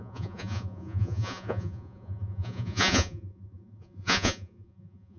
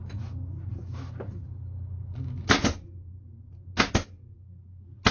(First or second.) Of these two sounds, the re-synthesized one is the first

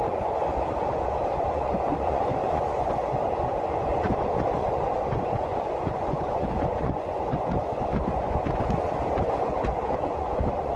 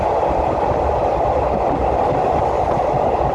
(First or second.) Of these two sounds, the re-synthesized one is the first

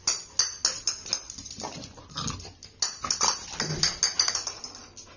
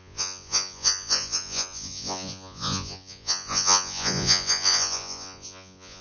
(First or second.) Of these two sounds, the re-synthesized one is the second